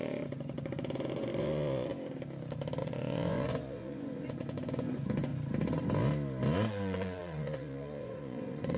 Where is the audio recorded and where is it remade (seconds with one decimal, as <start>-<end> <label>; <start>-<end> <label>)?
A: 0.0-1.9 remade; 1.9-2.8 recorded; 2.8-5.3 remade; 5.3-6.7 recorded; 6.7-8.8 remade